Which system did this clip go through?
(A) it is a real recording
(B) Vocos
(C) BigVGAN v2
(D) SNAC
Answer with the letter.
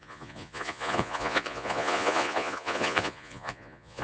B